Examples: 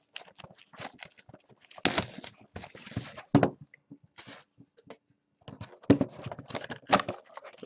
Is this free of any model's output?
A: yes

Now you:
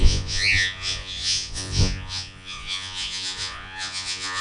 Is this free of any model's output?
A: no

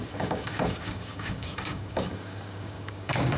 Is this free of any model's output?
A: no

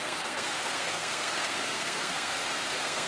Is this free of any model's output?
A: no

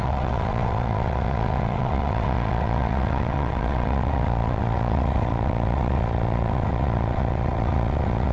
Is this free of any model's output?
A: no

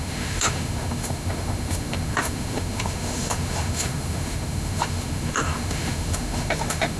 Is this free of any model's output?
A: no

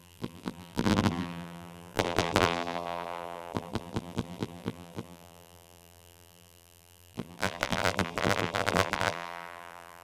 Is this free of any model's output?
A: no